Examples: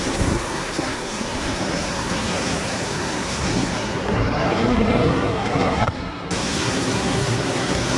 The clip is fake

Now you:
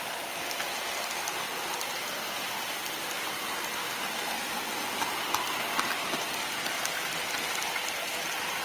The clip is real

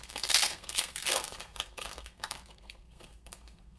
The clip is fake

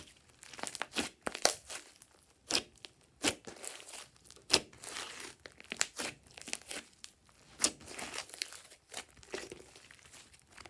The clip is real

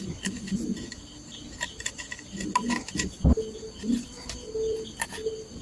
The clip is real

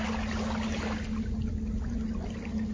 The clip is real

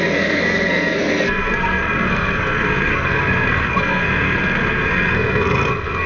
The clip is fake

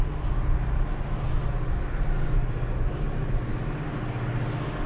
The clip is real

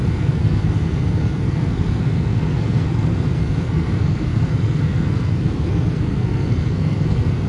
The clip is fake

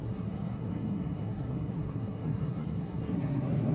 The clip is fake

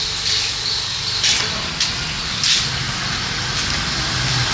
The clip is real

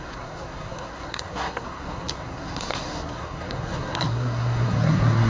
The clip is fake